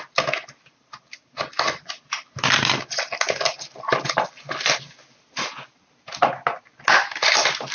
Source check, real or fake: real